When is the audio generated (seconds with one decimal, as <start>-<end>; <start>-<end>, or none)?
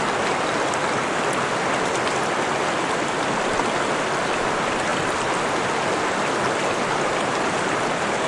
none